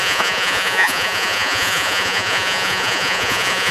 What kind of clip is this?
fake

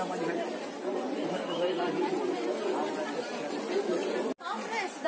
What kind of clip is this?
real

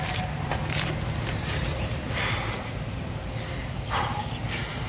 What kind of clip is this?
real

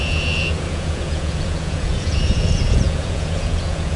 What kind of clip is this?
fake